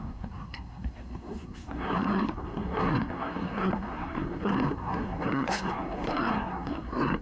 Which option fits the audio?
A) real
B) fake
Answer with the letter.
B